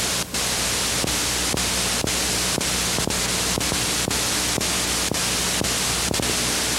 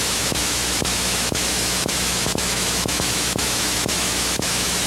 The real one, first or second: first